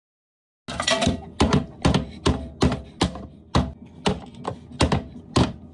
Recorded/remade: recorded